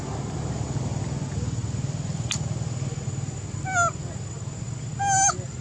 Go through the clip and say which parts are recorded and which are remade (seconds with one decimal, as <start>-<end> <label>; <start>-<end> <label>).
0.0-5.6 recorded

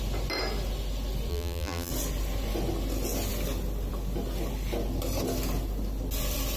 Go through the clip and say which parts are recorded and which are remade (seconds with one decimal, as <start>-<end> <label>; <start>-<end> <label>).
0.0-1.3 recorded; 1.3-1.9 remade; 1.9-6.6 recorded

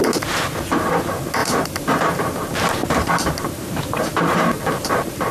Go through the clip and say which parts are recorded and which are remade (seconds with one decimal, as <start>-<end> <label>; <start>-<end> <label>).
0.0-1.4 recorded; 1.4-4.6 remade; 4.6-5.3 recorded

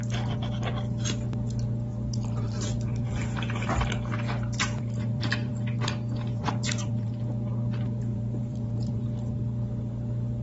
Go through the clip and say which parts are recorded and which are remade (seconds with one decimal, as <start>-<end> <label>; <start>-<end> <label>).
0.0-1.9 recorded; 1.9-5.5 remade; 5.5-6.3 recorded; 6.3-7.1 remade; 7.1-8.1 recorded; 8.1-9.0 remade; 9.0-10.4 recorded